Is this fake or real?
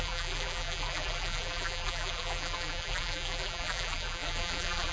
fake